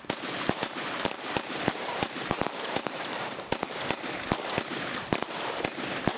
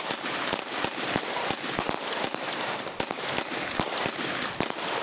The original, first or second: second